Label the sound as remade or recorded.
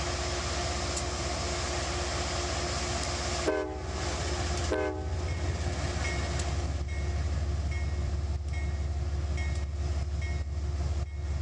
recorded